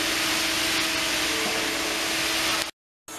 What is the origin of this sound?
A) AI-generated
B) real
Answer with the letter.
B